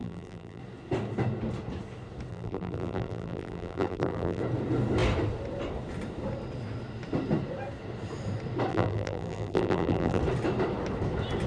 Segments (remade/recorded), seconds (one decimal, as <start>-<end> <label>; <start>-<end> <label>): 0.0-0.6 remade; 0.6-2.3 recorded; 2.3-4.4 remade; 4.4-8.7 recorded; 8.7-10.2 remade; 10.2-11.5 recorded